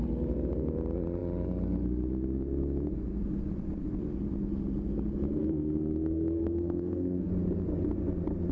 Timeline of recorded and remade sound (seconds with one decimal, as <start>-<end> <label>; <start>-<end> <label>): 0.0-5.4 recorded; 5.4-7.3 remade; 7.3-8.5 recorded